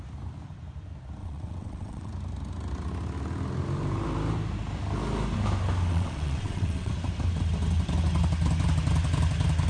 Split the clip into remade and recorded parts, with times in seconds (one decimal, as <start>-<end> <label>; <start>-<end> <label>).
0.0-1.2 recorded; 1.2-2.1 remade; 2.1-5.9 recorded; 5.9-6.9 remade; 6.9-9.7 recorded

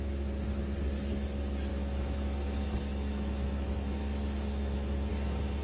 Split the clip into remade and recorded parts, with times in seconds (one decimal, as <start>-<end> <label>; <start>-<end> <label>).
0.0-1.7 recorded; 1.7-5.1 remade; 5.1-5.6 recorded

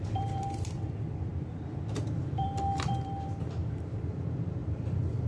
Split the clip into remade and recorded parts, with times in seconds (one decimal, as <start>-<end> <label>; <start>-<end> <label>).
0.0-1.3 remade; 1.3-2.3 recorded; 2.3-5.3 remade

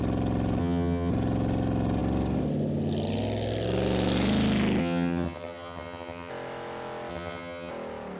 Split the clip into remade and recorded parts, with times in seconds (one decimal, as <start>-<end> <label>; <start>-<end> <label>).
0.0-0.6 recorded; 0.6-1.1 remade; 1.1-4.8 recorded; 4.8-6.3 remade; 6.3-7.1 recorded; 7.1-7.7 remade; 7.7-8.2 recorded

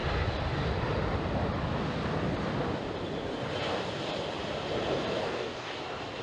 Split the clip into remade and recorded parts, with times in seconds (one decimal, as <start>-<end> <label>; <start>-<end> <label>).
0.0-5.2 recorded; 5.2-5.8 remade; 5.8-6.2 recorded

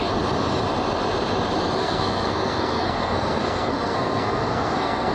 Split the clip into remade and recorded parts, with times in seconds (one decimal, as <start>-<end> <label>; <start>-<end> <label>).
0.0-1.8 recorded; 1.8-5.1 remade

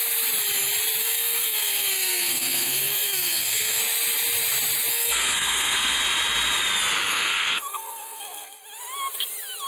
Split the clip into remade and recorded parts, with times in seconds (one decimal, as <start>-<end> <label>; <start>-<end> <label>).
0.0-1.0 recorded; 1.0-3.8 remade; 3.8-4.9 recorded; 4.9-6.0 remade; 6.0-7.1 recorded; 7.1-8.6 remade; 8.6-9.7 recorded